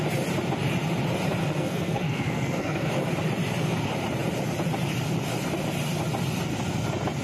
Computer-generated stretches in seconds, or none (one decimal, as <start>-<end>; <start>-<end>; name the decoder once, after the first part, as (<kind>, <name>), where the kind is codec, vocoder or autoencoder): 1.4-2.9 (codec, SNAC)